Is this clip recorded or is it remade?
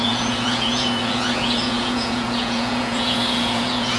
remade